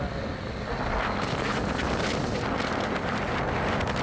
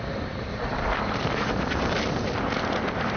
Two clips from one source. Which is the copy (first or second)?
second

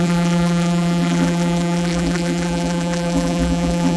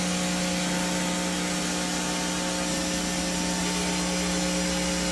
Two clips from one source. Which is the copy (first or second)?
first